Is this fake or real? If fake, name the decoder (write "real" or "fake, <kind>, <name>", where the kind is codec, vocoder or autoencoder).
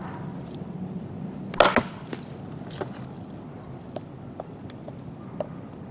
real